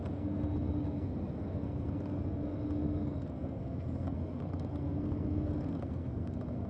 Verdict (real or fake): fake